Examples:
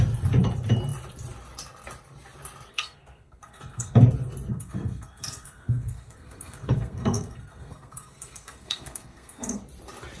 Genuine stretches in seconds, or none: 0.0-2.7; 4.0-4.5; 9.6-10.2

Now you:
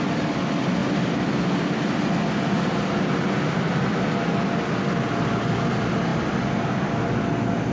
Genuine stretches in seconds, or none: 0.0-7.7

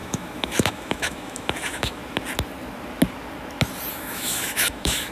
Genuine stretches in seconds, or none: 2.0-3.9

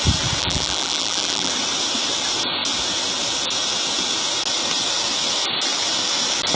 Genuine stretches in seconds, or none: 0.0-0.4; 1.5-6.6

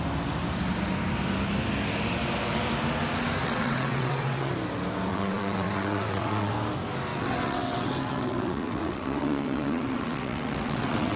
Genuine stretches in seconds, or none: 0.0-3.4; 4.5-5.1; 6.5-7.1

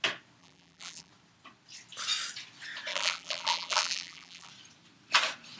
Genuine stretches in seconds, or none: 0.0-0.4; 1.1-2.9; 4.5-5.6

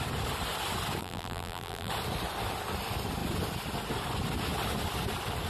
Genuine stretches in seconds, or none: 0.0-1.0; 1.9-5.5

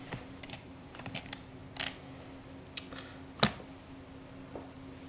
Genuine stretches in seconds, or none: 1.6-5.1